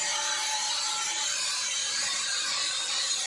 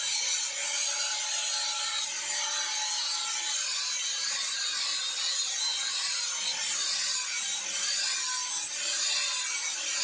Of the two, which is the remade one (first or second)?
first